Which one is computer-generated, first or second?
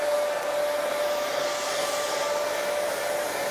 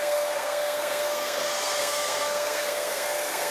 second